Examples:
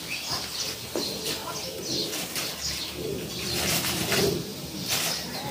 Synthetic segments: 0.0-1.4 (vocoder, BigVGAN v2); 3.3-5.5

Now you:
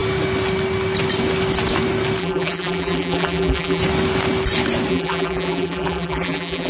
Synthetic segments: 2.2-3.8 (vocoder, BigVGAN v2); 4.9-6.7

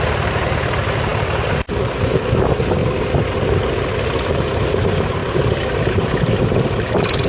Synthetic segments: 0.0-2.8 (vocoder, BigVGAN v2); 4.3-5.2; 5.9-7.3

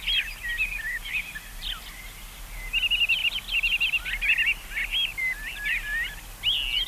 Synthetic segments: 1.0-2.7 (vocoder, BigVGAN v2); 3.2-4.0

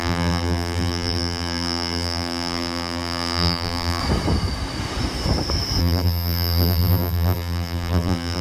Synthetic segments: 0.0-4.0 (vocoder, BigVGAN v2); 5.8-8.4

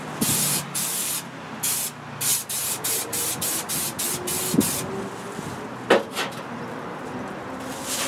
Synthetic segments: 2.3-3.7 (vocoder, BigVGAN v2)

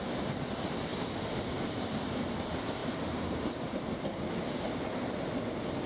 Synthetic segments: 2.8-4.8 (vocoder, BigVGAN v2)